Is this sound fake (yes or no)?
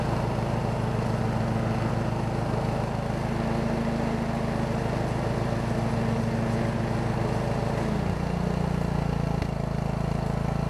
no